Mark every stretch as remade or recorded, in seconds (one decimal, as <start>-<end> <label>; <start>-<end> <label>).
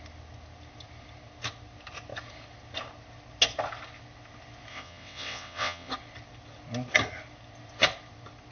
0.0-4.7 recorded; 4.7-5.9 remade; 5.9-8.5 recorded